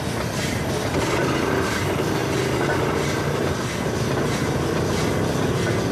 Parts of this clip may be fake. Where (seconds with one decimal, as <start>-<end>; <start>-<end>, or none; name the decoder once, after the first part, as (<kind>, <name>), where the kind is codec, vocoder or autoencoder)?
none